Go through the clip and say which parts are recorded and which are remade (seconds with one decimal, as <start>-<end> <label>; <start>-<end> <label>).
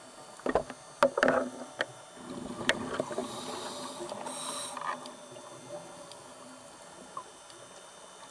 0.0-8.3 recorded